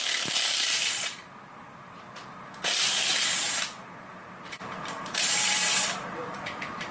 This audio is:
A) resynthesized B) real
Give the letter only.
A